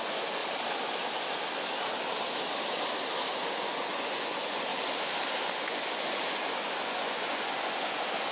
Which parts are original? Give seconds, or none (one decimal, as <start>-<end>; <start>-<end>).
0.4-3.6; 4.7-5.5

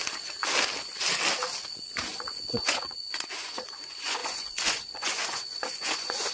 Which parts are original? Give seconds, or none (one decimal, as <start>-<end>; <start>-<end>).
0.0-2.1

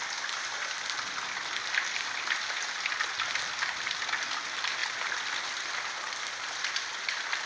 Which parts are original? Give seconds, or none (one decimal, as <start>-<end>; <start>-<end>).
0.0-7.5

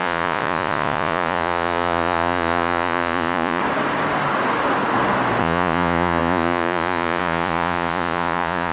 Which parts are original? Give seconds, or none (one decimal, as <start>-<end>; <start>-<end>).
3.6-5.4

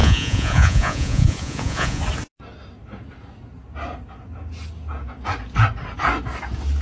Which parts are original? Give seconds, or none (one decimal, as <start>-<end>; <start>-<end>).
2.0-6.8

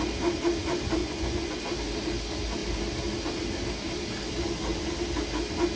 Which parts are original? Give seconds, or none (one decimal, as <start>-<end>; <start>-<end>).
0.0-1.0; 1.6-5.8

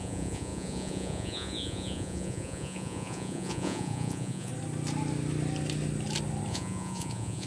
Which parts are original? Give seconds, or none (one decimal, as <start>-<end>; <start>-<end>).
4.5-6.5

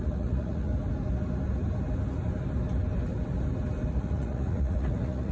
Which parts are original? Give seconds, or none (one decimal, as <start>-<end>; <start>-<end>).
0.7-3.9